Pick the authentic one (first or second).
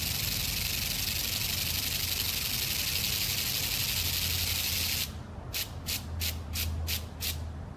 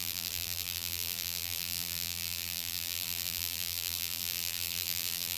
first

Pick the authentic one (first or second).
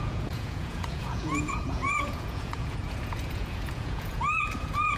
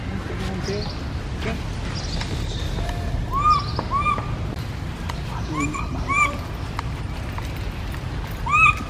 second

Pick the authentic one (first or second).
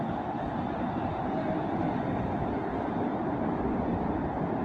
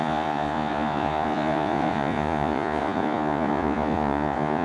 first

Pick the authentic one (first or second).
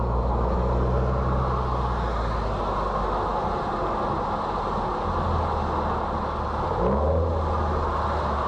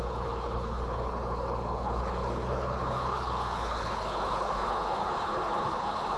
first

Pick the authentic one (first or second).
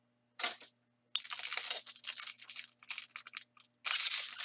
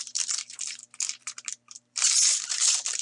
first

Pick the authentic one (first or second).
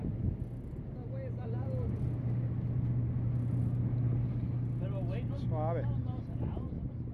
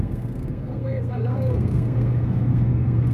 first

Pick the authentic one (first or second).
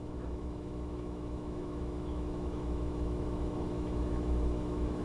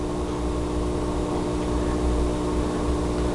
second